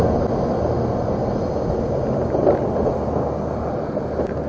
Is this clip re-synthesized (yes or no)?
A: no